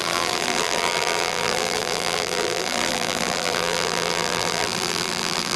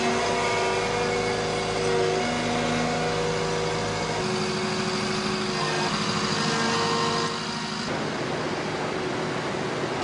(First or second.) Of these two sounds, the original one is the second